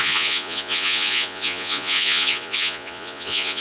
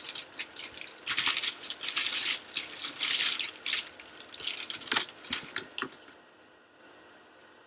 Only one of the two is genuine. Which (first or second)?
second